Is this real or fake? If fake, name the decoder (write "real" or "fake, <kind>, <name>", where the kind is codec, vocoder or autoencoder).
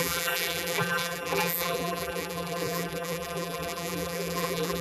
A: fake, vocoder, BigVGAN v2